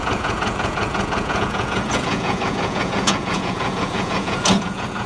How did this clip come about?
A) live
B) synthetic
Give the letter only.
B